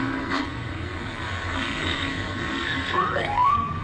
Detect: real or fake fake